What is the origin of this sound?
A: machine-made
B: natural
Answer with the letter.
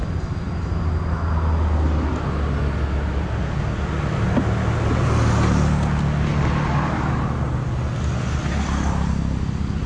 B